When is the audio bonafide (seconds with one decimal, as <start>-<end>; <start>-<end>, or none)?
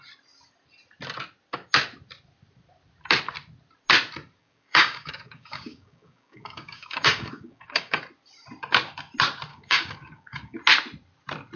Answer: 0.0-4.4; 8.0-9.5; 10.6-11.6